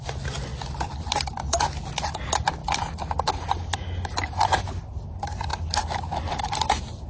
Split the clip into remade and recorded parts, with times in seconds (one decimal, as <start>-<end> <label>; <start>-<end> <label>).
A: 0.0-7.1 recorded